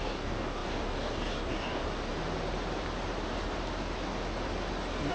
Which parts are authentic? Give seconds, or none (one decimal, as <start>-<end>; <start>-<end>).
1.8-5.1